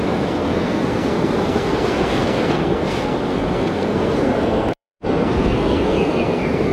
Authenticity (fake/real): fake